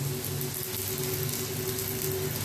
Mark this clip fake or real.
real